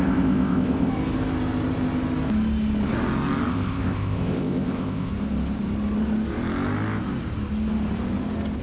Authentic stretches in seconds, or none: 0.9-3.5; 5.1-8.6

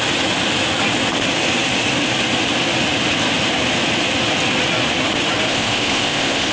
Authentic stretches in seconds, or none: 0.0-5.5

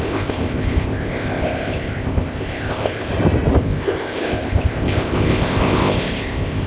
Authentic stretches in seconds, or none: 3.1-3.6

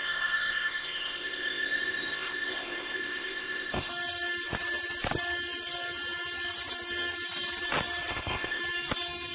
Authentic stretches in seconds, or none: 3.9-8.1; 8.6-9.3

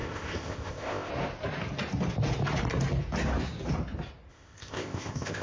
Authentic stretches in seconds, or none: 1.1-4.3

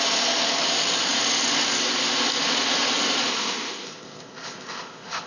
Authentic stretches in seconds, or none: 0.0-3.3

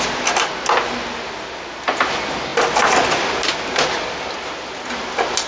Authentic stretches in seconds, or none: 0.0-5.5